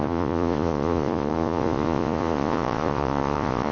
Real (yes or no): no